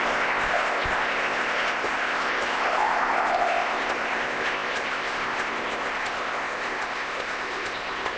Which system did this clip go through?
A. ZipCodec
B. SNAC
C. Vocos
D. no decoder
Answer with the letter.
A